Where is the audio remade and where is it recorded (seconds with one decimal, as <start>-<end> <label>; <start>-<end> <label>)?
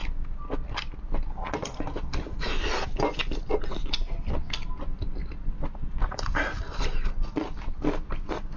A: 0.0-8.6 recorded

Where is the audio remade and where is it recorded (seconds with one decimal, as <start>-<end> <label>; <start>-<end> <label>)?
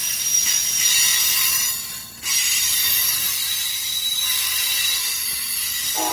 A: 0.0-6.1 recorded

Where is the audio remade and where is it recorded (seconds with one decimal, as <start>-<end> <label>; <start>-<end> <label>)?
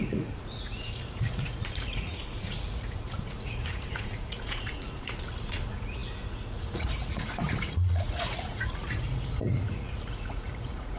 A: 0.0-11.0 remade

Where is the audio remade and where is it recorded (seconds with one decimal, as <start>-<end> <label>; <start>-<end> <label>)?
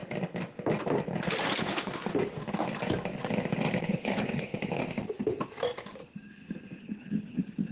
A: 0.0-1.6 recorded; 1.6-2.1 remade; 2.1-3.8 recorded; 3.8-4.8 remade; 4.8-6.8 recorded; 6.8-7.7 remade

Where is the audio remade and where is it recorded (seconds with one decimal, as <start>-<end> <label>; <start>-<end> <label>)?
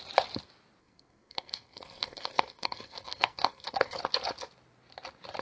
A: 0.0-0.8 recorded; 0.8-4.0 remade; 4.0-5.4 recorded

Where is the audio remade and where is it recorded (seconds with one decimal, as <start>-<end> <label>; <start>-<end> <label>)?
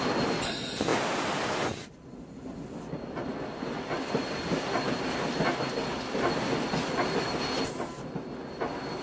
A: 0.0-9.0 recorded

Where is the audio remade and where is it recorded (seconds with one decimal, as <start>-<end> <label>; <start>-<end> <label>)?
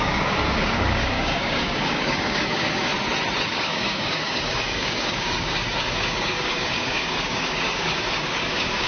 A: 0.0-2.9 remade; 2.9-3.5 recorded; 3.5-8.9 remade